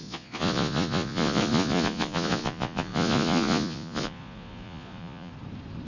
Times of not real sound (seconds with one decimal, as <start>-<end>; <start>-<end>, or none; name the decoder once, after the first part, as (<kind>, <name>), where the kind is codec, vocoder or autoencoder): 0.0-5.3 (vocoder, Vocos)